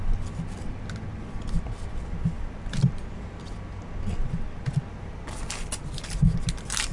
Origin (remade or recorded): recorded